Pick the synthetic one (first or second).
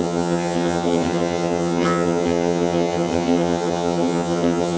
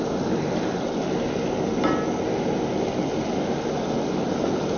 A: first